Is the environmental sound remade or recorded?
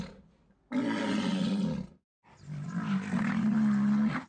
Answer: recorded